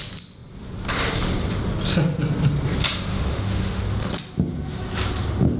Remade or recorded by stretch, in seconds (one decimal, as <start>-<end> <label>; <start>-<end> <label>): 0.0-3.1 recorded; 3.1-3.8 remade; 3.8-5.6 recorded